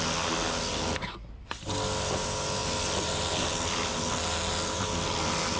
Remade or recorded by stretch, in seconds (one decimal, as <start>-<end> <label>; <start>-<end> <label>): 0.0-5.6 recorded